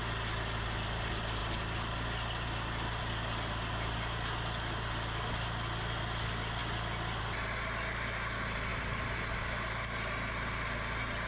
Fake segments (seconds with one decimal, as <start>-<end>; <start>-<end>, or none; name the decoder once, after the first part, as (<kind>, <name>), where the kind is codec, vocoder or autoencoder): none

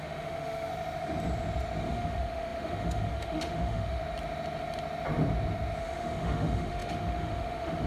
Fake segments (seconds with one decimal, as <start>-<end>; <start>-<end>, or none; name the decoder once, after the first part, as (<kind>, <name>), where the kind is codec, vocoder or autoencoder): 0.0-0.7 (autoencoder, DAC-VAE); 1.9-4.0; 5.8-7.9

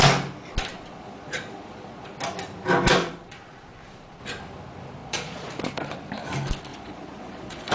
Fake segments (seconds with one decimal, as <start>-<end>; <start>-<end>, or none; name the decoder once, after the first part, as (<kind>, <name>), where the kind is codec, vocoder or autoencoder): 0.7-2.1 (vocoder, Vocos); 3.0-4.2; 5.0-5.5; 6.7-7.7

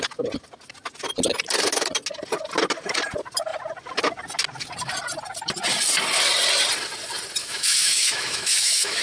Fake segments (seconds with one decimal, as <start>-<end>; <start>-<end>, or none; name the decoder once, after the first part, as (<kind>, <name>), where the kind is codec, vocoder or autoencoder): 7.4-9.0 (autoencoder, DAC-VAE)

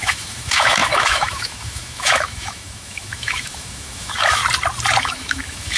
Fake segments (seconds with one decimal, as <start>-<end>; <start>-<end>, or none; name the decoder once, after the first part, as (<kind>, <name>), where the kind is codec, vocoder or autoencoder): 0.0-4.4 (autoencoder, DAC-VAE); 5.0-5.8

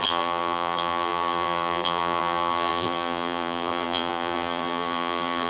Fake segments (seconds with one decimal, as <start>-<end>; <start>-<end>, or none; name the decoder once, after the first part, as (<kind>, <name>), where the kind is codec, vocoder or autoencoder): 0.0-5.5 (vocoder, BigVGAN v2)